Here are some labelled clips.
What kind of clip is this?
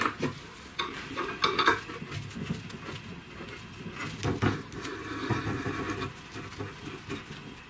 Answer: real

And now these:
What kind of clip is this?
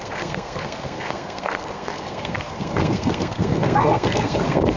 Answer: fake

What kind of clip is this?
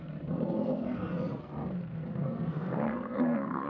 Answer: fake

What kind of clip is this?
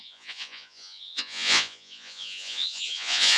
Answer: fake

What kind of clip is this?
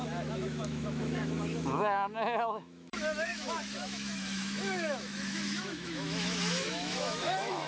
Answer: fake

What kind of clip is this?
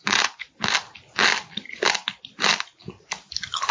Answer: real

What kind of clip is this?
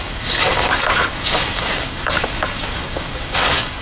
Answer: fake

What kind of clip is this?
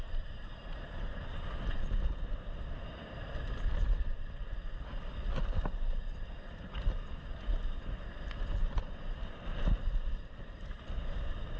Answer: real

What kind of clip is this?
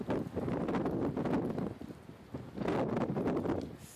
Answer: real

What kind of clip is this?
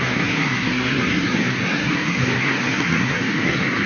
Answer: fake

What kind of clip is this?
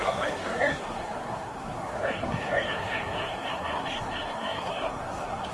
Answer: fake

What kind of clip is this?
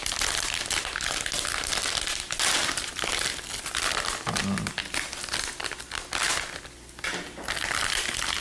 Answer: real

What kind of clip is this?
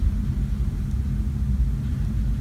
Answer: real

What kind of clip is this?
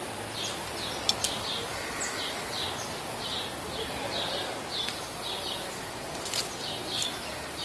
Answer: real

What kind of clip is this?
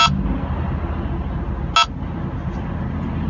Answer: real